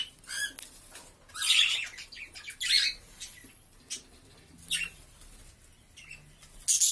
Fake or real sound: real